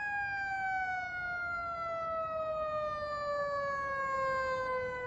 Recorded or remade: recorded